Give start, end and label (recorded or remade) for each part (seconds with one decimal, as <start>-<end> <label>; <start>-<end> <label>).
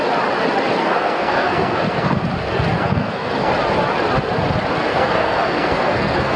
0.0-0.8 recorded; 0.8-2.2 remade; 2.2-2.7 recorded; 2.7-3.5 remade; 3.5-4.9 recorded; 4.9-6.4 remade